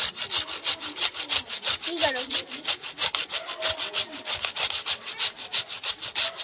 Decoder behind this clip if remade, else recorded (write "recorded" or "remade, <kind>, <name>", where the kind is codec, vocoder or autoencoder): recorded